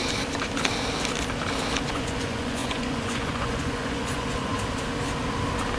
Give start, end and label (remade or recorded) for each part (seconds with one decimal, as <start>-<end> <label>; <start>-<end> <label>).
0.0-1.9 recorded; 1.9-4.5 remade; 4.5-5.8 recorded